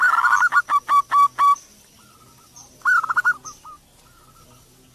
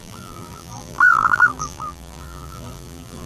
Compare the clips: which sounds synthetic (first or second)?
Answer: second